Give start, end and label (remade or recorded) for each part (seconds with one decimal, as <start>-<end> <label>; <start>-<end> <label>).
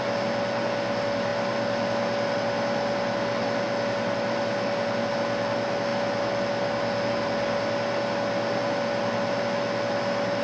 0.0-10.4 recorded